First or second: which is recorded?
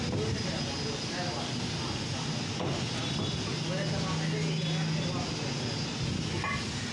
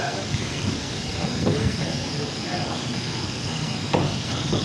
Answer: first